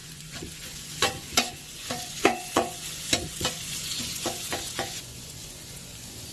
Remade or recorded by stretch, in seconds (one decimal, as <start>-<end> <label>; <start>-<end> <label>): 0.0-6.3 remade